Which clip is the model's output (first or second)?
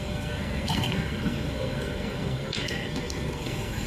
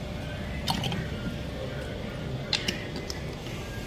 first